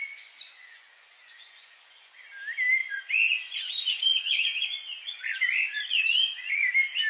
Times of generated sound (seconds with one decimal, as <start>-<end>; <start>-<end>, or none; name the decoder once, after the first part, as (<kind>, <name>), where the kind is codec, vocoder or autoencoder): 0.0-2.2 (vocoder, Vocos); 2.8-6.5